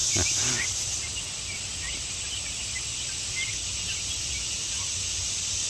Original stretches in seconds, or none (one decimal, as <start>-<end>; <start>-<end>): 0.0-5.7